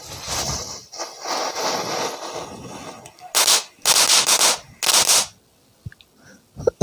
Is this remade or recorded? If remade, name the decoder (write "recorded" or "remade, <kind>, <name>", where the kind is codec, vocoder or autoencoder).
recorded